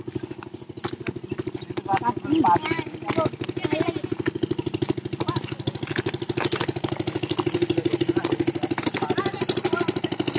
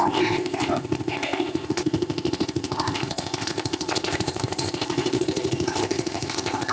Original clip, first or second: first